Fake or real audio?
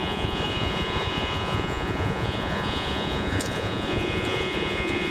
fake